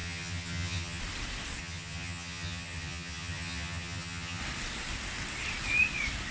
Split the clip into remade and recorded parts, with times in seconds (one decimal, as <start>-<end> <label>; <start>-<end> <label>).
0.0-1.0 remade; 1.0-1.6 recorded; 1.6-4.4 remade; 4.4-6.3 recorded